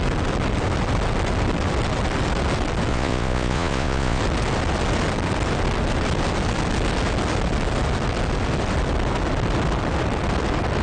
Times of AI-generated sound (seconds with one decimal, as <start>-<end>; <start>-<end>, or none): 2.9-4.2